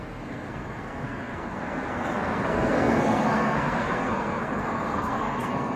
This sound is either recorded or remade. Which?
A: remade